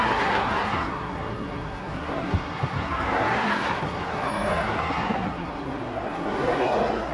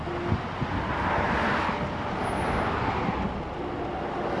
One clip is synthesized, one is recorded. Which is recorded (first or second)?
second